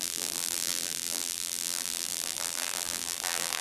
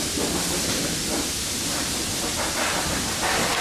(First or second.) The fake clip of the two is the first